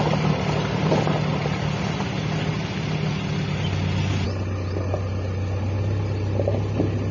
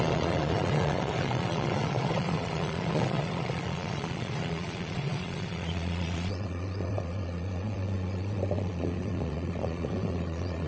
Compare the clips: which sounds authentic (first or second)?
first